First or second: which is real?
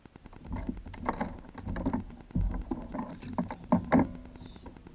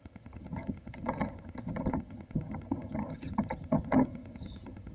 first